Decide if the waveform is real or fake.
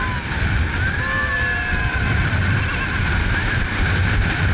real